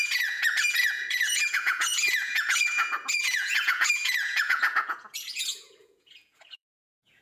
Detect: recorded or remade remade